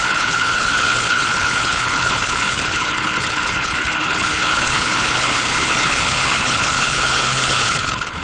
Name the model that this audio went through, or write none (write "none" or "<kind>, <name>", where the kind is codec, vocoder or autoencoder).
codec, HILCodec